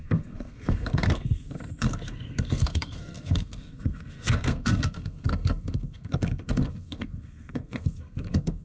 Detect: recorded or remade remade